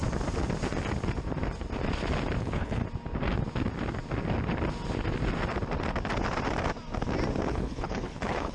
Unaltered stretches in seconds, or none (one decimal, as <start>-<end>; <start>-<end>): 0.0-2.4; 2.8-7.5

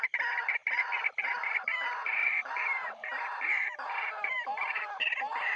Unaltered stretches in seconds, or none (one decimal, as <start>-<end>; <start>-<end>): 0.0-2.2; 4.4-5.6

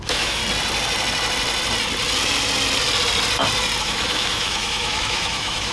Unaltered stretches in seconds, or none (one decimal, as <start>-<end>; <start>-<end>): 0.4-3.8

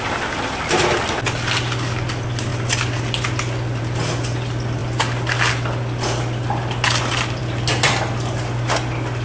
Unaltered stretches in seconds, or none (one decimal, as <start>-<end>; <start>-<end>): 0.0-9.2

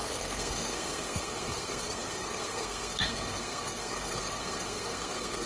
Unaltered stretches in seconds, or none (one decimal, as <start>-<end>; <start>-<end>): none